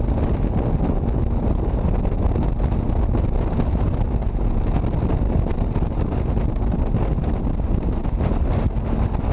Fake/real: real